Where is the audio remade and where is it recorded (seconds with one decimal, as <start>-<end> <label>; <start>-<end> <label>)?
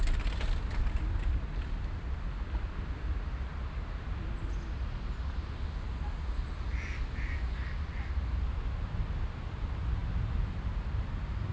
0.0-11.5 recorded